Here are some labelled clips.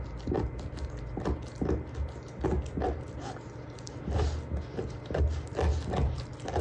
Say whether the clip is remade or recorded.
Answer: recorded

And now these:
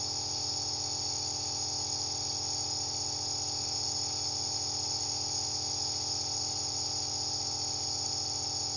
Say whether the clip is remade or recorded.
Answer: recorded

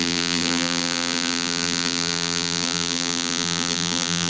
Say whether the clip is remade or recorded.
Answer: remade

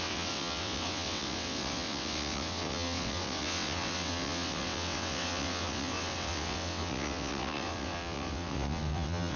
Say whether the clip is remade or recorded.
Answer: remade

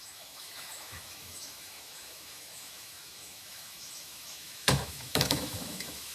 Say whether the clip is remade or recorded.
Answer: remade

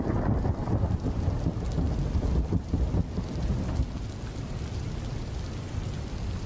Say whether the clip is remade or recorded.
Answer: recorded